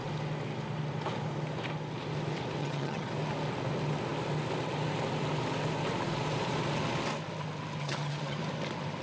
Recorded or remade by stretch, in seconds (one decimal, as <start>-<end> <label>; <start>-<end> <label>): 0.0-2.6 recorded; 2.6-3.1 remade; 3.1-7.8 recorded; 7.8-8.4 remade; 8.4-9.0 recorded

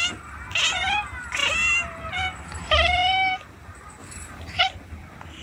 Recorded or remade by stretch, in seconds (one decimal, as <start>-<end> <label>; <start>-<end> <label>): 0.0-4.0 recorded; 4.0-4.6 remade; 4.6-5.4 recorded

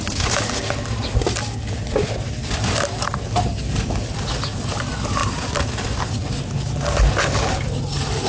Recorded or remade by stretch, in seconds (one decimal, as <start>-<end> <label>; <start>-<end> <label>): 0.0-8.3 recorded

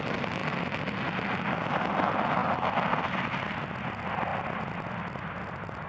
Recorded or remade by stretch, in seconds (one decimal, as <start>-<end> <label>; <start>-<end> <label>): 0.0-5.9 recorded

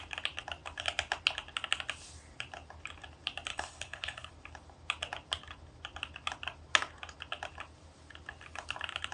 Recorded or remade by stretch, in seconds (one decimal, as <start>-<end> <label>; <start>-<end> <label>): 0.0-3.5 recorded; 3.5-4.3 remade; 4.3-9.1 recorded

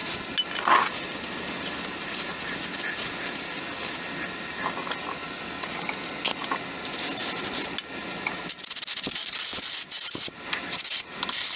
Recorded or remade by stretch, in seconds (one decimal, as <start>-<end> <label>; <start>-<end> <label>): 0.0-9.2 recorded; 9.2-9.7 remade; 9.7-11.6 recorded